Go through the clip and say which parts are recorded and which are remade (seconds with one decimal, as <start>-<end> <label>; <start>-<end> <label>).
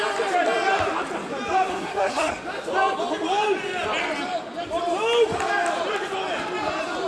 0.0-1.7 recorded; 1.7-2.3 remade; 2.3-7.1 recorded